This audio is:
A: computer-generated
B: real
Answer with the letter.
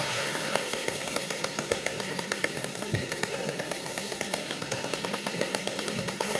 A